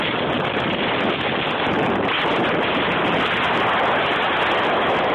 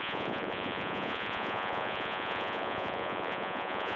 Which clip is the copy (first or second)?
second